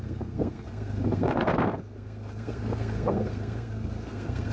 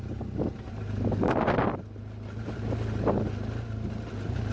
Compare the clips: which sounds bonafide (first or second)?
second